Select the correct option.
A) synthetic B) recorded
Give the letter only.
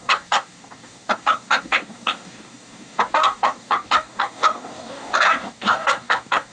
A